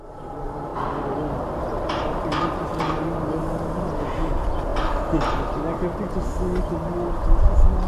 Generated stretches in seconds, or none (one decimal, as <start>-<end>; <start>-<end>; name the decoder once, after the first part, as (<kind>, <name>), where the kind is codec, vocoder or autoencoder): 0.0-0.7 (vocoder, BigVGAN v2); 1.6-4.7; 6.7-7.9